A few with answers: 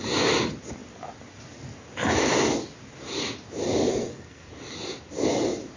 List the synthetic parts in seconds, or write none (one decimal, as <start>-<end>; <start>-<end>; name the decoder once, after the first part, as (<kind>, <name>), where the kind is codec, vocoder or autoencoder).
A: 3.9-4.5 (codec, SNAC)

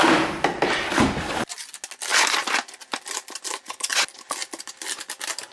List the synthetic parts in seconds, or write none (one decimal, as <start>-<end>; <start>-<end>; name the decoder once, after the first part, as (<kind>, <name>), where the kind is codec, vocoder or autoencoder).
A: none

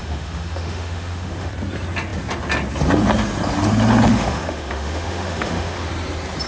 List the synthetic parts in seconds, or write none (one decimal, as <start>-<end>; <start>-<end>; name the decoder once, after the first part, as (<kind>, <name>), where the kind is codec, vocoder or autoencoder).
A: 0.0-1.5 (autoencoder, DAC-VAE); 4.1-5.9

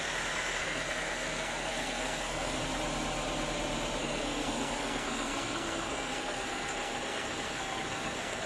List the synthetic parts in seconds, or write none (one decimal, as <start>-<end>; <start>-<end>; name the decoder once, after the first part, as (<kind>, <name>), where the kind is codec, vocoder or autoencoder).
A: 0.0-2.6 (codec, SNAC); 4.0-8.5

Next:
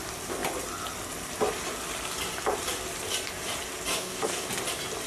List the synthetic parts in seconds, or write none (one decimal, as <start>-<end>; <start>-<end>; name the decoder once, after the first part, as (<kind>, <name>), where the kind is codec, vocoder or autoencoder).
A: 3.9-4.5 (codec, DAC)

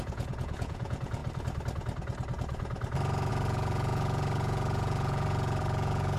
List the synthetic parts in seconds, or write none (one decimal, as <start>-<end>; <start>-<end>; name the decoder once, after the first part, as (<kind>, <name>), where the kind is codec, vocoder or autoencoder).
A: 0.0-1.2 (vocoder, Vocos); 3.3-6.2